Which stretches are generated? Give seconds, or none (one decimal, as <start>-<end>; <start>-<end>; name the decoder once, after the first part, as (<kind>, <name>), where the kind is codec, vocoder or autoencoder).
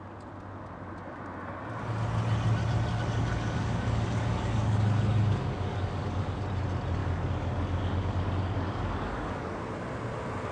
2.9-6.4 (codec, DAC); 7.0-9.6